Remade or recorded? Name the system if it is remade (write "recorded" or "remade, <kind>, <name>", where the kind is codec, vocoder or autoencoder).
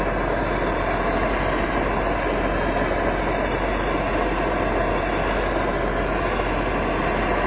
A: recorded